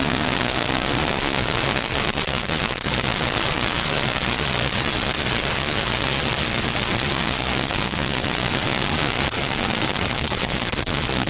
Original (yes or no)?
no